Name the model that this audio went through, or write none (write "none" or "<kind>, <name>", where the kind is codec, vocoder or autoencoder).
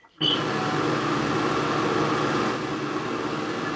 none